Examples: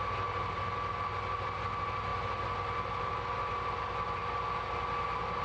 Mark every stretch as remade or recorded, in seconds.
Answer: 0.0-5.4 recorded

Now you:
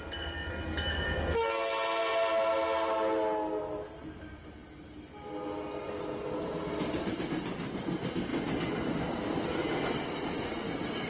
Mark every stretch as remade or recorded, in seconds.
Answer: 0.0-11.1 recorded